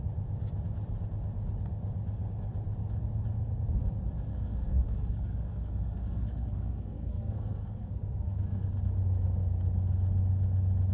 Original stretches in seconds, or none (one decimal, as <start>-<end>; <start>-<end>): 0.0-4.3; 8.7-10.9